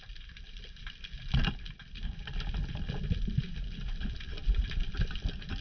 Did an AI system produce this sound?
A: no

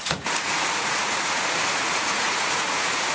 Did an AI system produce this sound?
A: yes